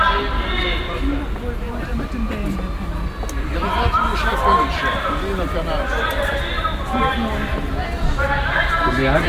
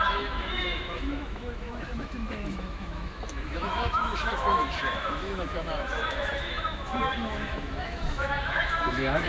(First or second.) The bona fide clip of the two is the first